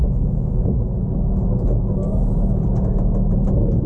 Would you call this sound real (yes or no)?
yes